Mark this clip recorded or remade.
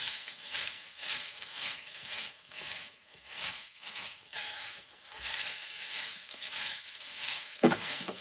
remade